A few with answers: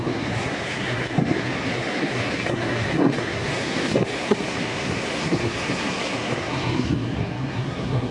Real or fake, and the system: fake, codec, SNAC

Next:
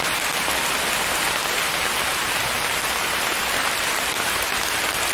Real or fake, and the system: real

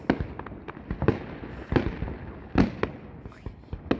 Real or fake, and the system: real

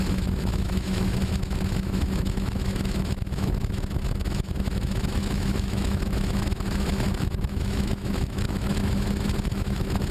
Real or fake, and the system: fake, autoencoder, DAC-VAE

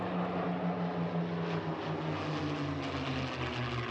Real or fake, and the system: real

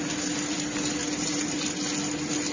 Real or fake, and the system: real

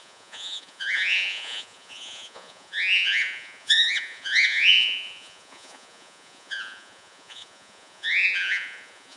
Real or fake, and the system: fake, vocoder, Vocos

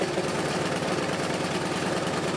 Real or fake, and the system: real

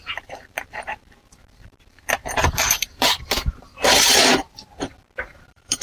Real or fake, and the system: fake, vocoder, BigVGAN v2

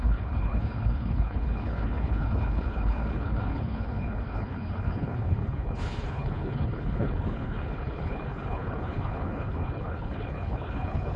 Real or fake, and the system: fake, codec, HILCodec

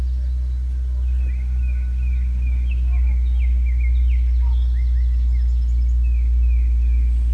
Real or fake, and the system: real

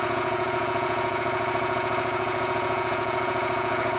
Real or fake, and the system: fake, vocoder, Vocos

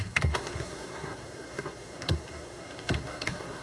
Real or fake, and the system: fake, codec, SNAC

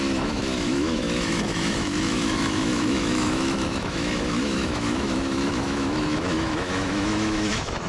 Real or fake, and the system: fake, autoencoder, DAC-VAE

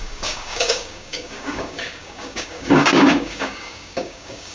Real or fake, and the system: fake, codec, DAC